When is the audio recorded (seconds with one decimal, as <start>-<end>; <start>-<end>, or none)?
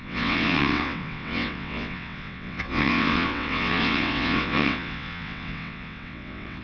none